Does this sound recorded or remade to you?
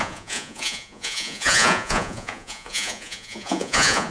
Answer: remade